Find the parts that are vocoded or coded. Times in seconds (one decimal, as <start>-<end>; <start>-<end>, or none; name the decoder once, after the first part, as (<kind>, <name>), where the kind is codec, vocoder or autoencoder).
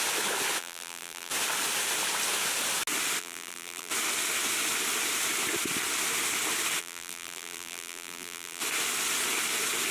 0.6-1.3 (vocoder, BigVGAN v2); 3.2-3.9; 6.8-8.6